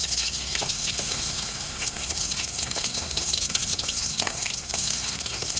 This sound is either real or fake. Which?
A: fake